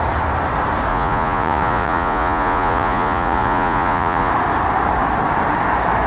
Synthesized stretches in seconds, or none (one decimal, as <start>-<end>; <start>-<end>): 0.9-4.3